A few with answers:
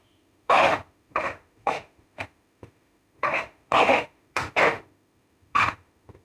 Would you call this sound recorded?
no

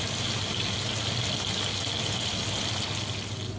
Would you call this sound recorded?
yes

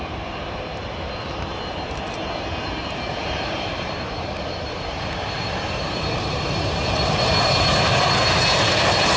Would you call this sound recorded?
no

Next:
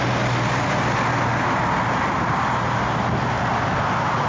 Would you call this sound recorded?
yes